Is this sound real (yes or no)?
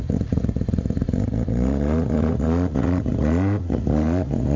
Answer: no